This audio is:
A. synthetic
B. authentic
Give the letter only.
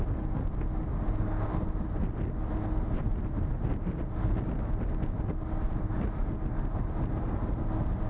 B